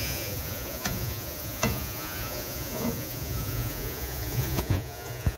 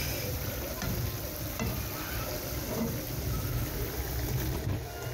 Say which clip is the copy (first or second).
first